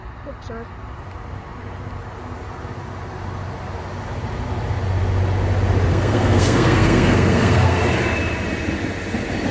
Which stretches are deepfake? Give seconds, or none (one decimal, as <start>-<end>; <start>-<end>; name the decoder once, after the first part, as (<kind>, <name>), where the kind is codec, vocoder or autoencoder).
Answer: 5.9-7.8 (codec, SNAC)